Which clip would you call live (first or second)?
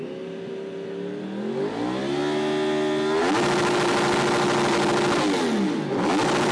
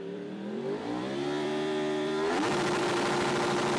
first